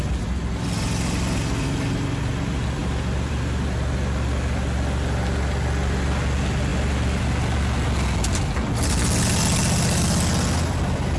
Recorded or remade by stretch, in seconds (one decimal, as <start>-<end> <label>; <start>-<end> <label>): 0.0-11.2 recorded